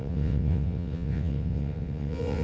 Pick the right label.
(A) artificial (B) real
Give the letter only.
A